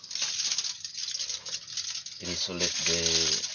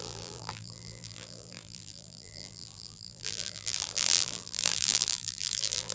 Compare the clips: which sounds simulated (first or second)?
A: second